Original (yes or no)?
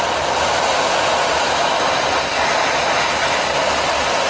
yes